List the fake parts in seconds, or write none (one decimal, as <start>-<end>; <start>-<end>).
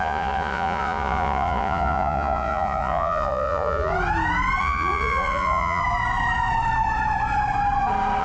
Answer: 0.0-3.9; 4.6-5.8